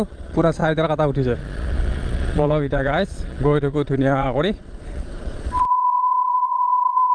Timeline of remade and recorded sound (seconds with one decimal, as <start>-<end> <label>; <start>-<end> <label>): 0.0-0.6 remade; 0.6-1.4 recorded; 1.4-7.1 remade